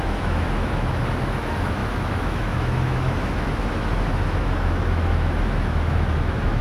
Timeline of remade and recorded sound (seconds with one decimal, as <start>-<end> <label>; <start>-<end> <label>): 0.0-6.6 remade